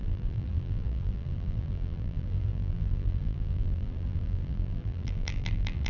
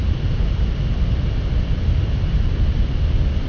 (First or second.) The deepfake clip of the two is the first